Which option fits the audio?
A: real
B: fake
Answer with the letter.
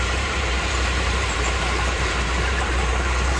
B